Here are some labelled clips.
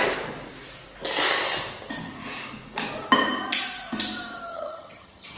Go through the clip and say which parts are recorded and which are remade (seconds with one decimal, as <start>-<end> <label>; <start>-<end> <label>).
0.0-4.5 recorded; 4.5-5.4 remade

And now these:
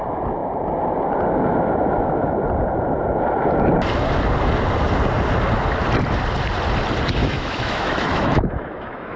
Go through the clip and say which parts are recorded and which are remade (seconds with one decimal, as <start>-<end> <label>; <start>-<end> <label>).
0.0-7.2 recorded; 7.2-9.2 remade

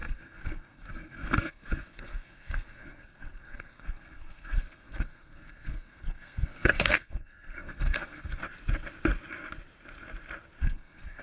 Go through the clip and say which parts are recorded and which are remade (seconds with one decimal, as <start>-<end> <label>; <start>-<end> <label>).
0.0-8.4 remade; 8.4-10.6 recorded; 10.6-11.2 remade